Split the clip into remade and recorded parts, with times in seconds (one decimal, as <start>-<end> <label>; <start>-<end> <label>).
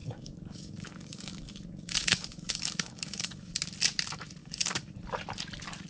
0.0-3.5 remade; 3.5-4.4 recorded; 4.4-4.9 remade; 4.9-5.9 recorded